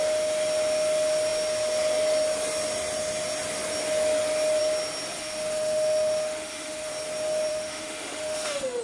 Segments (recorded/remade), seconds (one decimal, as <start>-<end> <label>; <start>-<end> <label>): 0.0-5.2 recorded; 5.2-6.9 remade; 6.9-7.5 recorded; 7.5-8.8 remade